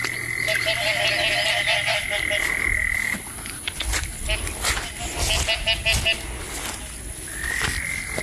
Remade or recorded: recorded